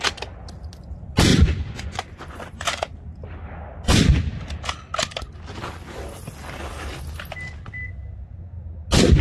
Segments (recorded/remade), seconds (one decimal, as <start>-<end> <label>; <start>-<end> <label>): 0.0-1.3 recorded; 1.3-2.9 remade; 2.9-9.2 recorded